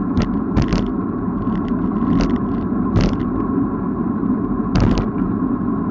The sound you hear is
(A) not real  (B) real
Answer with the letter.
B